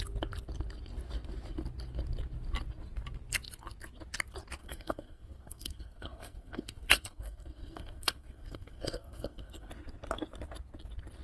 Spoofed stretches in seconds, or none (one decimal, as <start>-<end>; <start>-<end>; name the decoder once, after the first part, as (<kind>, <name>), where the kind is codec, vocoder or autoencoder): 4.6-9.7 (codec, SNAC)